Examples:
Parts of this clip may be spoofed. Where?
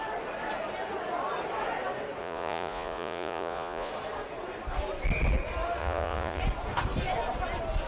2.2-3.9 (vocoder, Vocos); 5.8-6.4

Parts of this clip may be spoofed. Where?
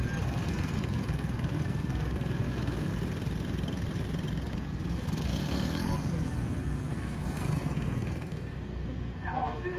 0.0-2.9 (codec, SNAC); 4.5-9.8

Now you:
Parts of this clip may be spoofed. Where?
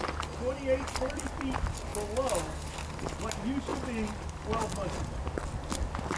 none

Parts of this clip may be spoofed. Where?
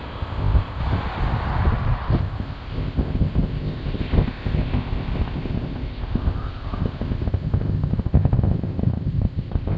0.0-0.8 (codec, ZipCodec); 2.2-9.8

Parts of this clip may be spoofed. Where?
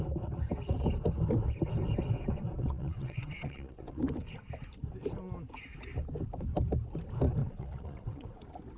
2.6-4.0 (vocoder, WaveNeXt); 7.4-8.4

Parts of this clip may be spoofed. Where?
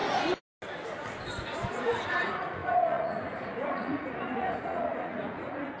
1.7-5.8 (vocoder, Vocos)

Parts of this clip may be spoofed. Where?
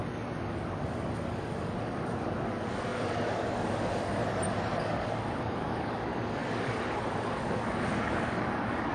0.0-4.2 (codec, DAC); 4.8-8.9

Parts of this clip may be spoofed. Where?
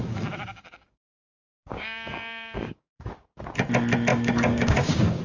0.0-3.1 (codec, DAC); 4.1-5.2